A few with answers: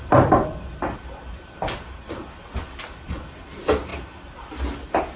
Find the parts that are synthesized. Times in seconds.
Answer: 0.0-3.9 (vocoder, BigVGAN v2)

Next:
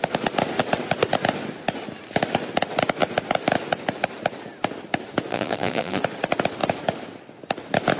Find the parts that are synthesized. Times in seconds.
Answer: 5.3-6.0 (vocoder, BigVGAN v2)

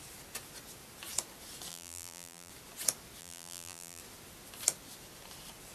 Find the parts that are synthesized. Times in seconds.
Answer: 1.7-2.5 (vocoder, BigVGAN v2); 3.2-4.0